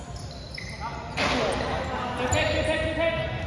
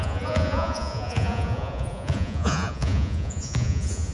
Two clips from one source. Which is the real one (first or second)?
first